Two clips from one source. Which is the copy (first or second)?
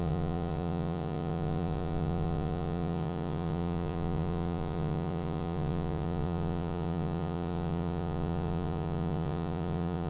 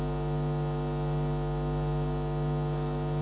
first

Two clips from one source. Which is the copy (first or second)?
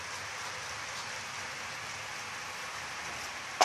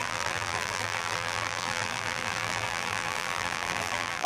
second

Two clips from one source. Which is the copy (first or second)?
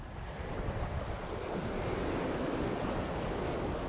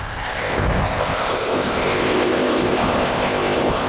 second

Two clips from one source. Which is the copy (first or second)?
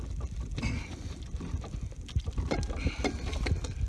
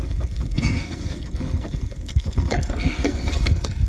second